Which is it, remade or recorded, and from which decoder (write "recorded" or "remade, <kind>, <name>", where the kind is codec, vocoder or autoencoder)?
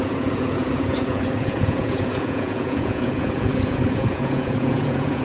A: remade, vocoder, Vocos